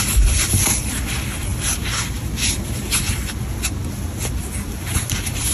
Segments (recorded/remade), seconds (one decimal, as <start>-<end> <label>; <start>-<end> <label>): 0.0-5.5 recorded